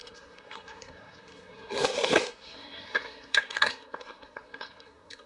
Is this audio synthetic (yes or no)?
yes